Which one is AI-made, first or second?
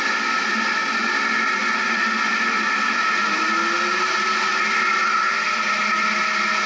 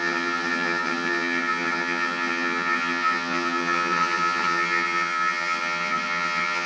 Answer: second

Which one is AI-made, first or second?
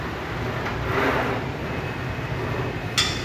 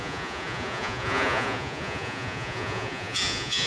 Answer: second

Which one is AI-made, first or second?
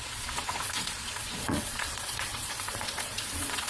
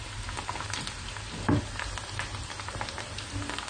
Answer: first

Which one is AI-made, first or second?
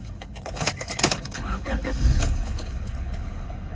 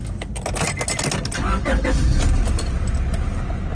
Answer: first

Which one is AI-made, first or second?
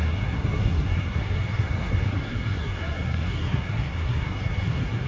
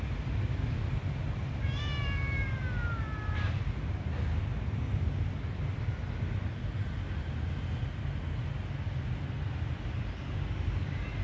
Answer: first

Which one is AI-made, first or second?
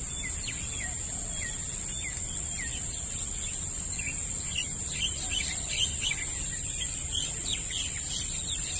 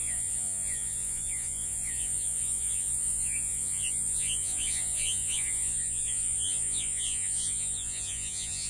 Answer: second